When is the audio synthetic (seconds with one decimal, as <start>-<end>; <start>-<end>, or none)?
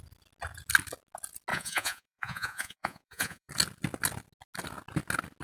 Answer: 1.5-3.5